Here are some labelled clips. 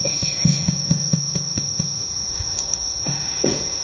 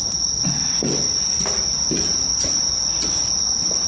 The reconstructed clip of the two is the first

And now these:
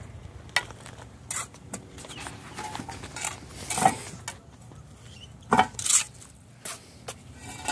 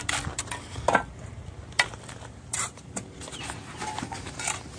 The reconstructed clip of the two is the second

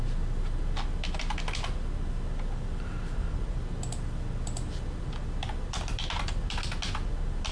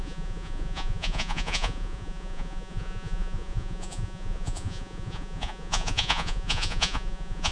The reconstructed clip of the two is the second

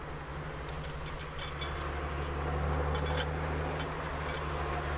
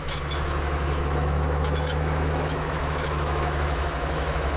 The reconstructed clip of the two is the second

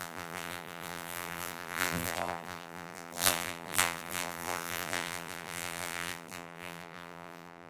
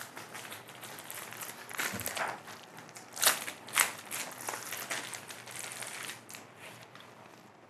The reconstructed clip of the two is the first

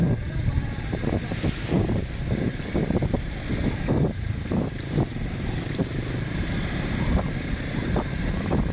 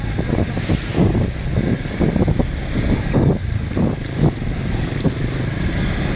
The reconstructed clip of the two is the first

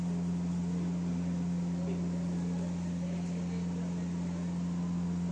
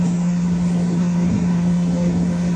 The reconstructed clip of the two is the second